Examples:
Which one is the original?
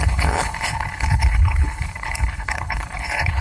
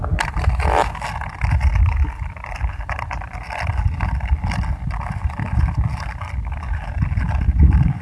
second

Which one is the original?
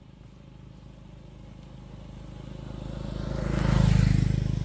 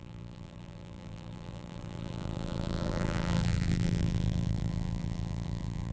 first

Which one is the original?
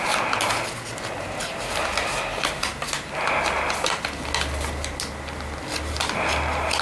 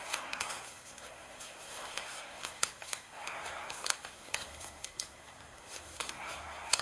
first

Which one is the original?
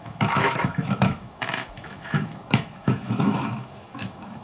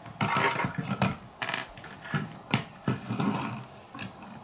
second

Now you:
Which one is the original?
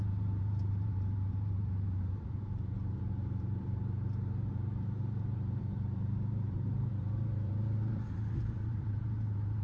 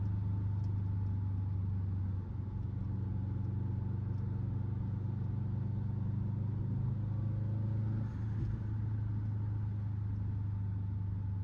second